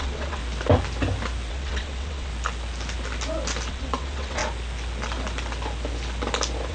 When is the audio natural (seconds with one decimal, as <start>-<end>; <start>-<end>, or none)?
0.4-1.5; 2.3-3.7; 4.4-6.7

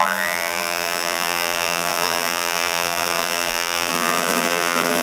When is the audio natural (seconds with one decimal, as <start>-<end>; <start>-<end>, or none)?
none